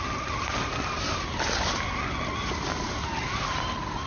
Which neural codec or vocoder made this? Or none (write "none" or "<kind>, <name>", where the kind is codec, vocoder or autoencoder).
none